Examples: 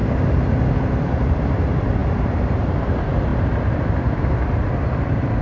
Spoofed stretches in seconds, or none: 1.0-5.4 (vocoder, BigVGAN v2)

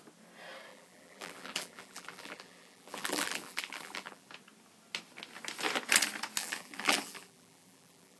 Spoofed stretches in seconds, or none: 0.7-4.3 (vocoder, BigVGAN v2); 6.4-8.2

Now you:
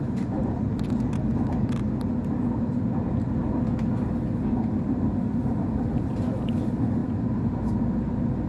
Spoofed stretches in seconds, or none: 0.0-1.3 (vocoder, BigVGAN v2); 4.6-7.0; 7.7-8.5